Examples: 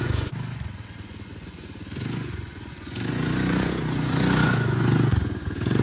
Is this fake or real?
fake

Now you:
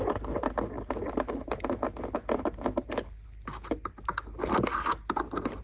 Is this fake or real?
real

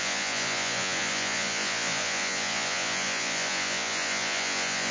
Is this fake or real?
fake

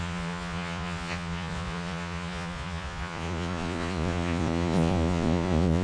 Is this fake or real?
fake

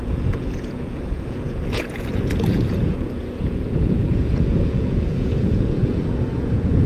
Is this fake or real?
fake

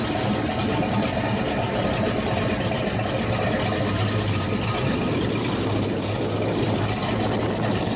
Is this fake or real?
real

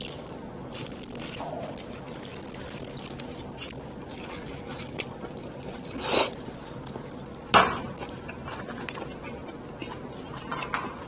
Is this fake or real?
real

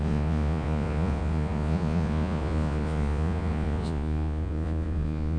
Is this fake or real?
fake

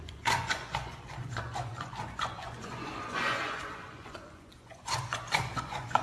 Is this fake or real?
fake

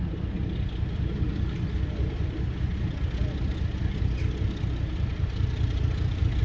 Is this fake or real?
real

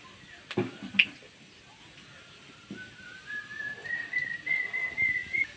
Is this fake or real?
real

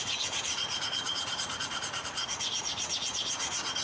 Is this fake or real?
fake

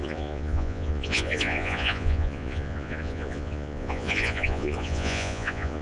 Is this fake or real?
fake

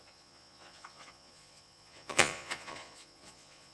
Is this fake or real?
fake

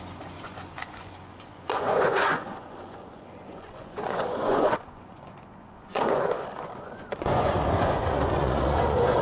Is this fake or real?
fake